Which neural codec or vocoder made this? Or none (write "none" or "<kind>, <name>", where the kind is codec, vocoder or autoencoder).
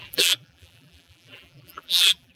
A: vocoder, BigVGAN v2